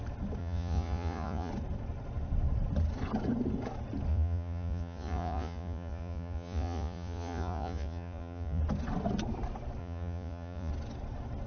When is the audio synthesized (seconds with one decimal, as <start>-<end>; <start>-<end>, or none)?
0.4-1.5; 4.1-8.6; 9.8-10.7